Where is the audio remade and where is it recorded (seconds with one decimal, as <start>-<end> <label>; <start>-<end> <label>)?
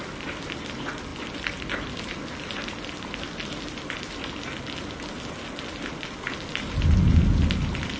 0.0-8.0 recorded